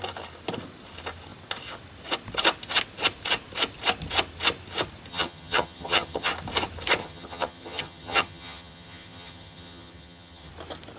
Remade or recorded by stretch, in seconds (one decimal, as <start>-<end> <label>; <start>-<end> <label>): 0.0-5.1 recorded; 5.1-6.3 remade; 6.3-7.0 recorded; 7.0-10.5 remade; 10.5-11.0 recorded